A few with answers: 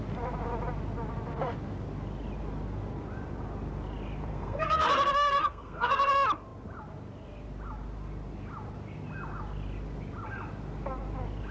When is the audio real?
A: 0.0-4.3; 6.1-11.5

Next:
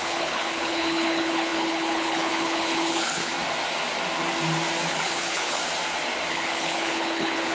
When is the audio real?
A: 3.3-4.9; 5.6-6.3